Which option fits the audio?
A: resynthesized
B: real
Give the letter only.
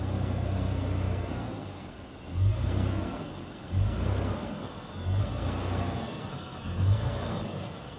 A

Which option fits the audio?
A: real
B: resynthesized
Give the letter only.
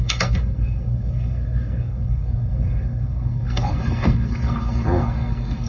B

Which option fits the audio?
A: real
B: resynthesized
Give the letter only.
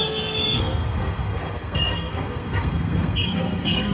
B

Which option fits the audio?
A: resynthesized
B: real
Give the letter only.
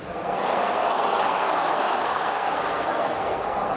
A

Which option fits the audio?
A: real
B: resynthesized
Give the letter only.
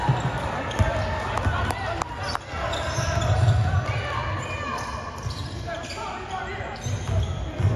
A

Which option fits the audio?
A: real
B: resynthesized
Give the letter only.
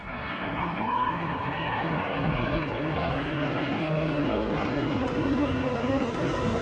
B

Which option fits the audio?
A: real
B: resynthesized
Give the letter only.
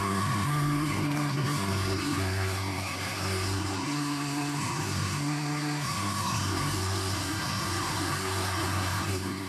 B